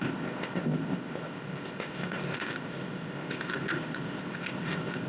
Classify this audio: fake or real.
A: fake